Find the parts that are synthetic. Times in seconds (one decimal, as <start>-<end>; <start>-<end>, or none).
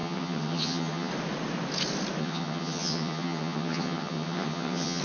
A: 0.0-1.1; 2.2-5.0